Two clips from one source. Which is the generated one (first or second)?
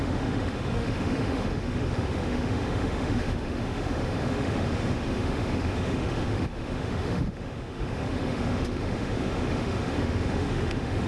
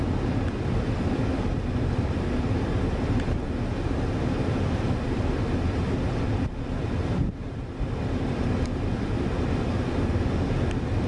first